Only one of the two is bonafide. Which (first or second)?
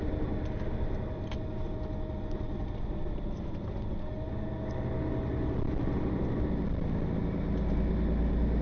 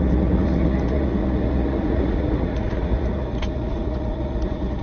first